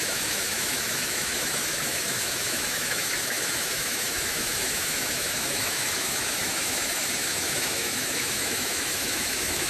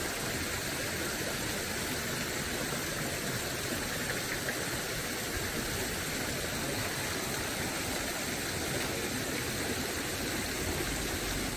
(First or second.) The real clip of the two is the second